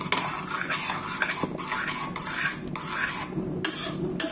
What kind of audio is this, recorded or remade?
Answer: recorded